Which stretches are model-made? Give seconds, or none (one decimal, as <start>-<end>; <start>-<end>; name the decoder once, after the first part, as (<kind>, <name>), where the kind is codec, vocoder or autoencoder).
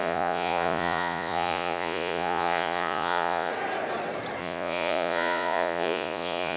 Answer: 0.0-3.5 (vocoder, Vocos); 4.4-6.6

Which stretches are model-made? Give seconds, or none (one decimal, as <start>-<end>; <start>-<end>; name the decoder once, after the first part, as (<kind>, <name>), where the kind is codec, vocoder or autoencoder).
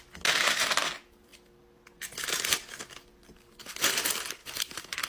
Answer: 4.4-5.1 (vocoder, BigVGAN v2)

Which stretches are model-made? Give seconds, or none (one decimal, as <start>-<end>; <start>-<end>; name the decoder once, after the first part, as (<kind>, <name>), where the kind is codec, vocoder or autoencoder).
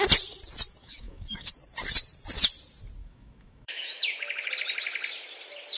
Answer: 0.8-1.5 (autoencoder, DAC-VAE); 3.0-4.5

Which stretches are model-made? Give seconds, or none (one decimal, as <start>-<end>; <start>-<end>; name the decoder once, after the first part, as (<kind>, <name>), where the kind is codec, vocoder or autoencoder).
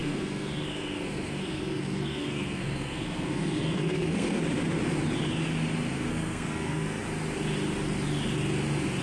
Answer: 0.0-4.4 (codec, SNAC); 6.1-7.0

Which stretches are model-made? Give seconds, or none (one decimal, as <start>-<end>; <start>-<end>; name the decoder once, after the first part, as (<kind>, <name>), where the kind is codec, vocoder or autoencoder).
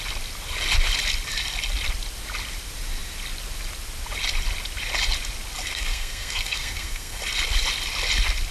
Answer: 5.7-7.2 (codec, SNAC)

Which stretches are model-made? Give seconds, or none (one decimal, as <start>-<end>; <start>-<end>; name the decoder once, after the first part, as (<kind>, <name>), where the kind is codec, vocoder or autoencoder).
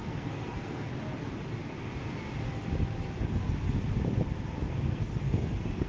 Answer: 0.0-0.9 (codec, SNAC); 4.7-5.9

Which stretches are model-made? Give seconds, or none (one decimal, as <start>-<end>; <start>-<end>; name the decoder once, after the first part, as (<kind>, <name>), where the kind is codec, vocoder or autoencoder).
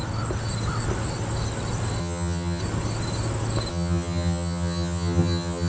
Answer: 2.0-2.6 (vocoder, HiFi-GAN); 3.7-5.7